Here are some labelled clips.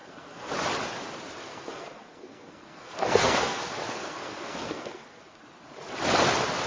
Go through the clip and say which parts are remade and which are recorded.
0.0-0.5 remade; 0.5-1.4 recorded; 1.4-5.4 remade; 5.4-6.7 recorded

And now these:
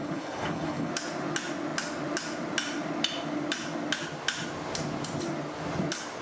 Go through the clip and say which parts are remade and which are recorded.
0.0-0.9 remade; 0.9-6.2 recorded

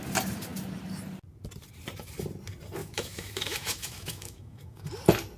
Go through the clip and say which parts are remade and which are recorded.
0.0-2.8 recorded; 2.8-4.9 remade; 4.9-5.4 recorded

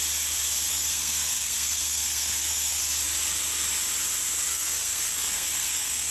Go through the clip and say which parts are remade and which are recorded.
0.0-0.7 recorded; 0.7-2.8 remade; 2.8-4.5 recorded; 4.5-6.1 remade

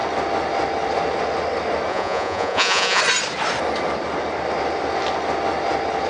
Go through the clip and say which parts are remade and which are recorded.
0.0-1.9 recorded; 1.9-3.0 remade; 3.0-6.1 recorded

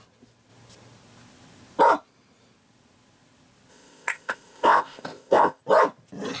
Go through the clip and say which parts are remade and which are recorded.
0.0-3.7 recorded; 3.7-5.6 remade; 5.6-6.4 recorded

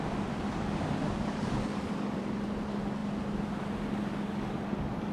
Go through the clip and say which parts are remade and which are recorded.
0.0-0.5 recorded; 0.5-2.2 remade; 2.2-4.0 recorded; 4.0-5.1 remade